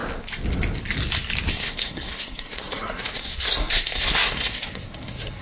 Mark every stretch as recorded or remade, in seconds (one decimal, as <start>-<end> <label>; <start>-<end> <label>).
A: 0.0-1.5 recorded; 1.5-5.4 remade